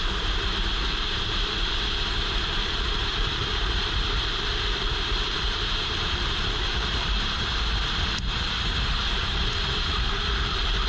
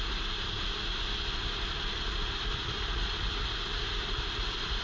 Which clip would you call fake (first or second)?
first